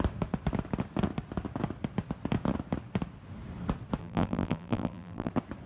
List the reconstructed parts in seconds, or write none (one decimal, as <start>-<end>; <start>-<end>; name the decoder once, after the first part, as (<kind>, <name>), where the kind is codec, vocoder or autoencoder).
4.0-5.3 (vocoder, BigVGAN v2)